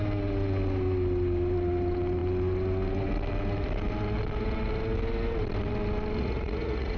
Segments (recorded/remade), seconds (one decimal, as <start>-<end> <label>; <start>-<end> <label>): 0.0-6.2 recorded; 6.2-7.0 remade